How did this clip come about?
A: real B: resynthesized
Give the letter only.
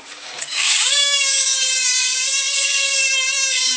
B